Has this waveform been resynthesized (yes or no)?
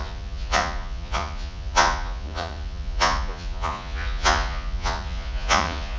yes